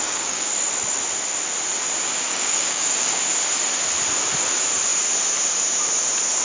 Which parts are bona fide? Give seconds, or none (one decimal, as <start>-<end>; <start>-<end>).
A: 0.5-2.3; 3.2-6.4